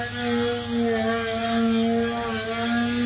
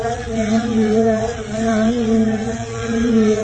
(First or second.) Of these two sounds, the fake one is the second